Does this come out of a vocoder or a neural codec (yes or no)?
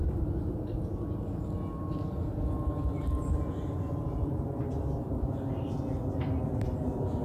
no